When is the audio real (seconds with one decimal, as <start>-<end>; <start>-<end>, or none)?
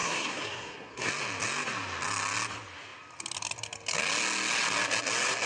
1.1-5.5